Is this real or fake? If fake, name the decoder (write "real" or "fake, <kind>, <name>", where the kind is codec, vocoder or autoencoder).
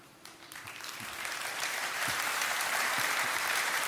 fake, vocoder, BigVGAN v2